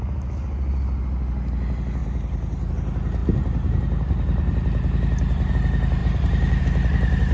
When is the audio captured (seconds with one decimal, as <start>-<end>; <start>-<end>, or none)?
0.0-2.0; 2.7-6.0; 6.6-7.3